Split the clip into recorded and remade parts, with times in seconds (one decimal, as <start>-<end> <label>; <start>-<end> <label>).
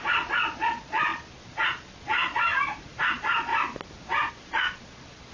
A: 0.0-2.5 remade; 2.5-3.0 recorded; 3.0-3.5 remade; 3.5-4.3 recorded; 4.3-5.3 remade